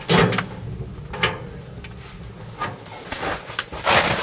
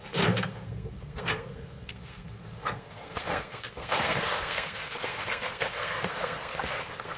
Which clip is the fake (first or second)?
second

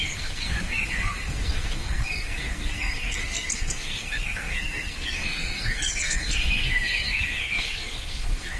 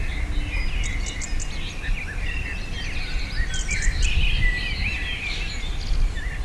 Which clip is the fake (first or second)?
first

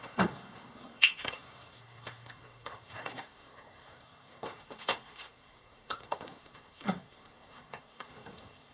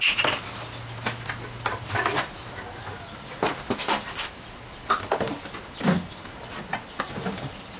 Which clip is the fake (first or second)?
first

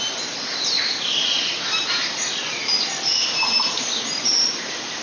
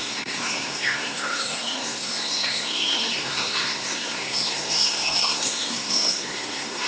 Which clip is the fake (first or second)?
second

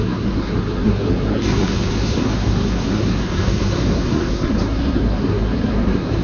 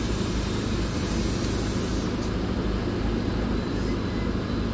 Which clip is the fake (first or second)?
first